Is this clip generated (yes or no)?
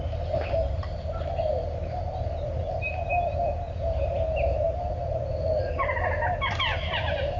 no